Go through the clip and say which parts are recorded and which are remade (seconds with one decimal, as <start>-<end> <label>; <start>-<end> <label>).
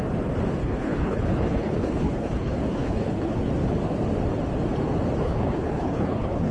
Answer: 0.0-0.6 recorded; 0.6-3.5 remade; 3.5-5.2 recorded; 5.2-6.5 remade